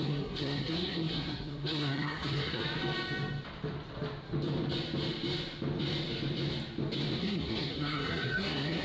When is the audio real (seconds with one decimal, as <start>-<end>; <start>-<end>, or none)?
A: 2.6-7.2